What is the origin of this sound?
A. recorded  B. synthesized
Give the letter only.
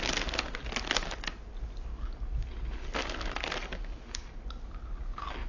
A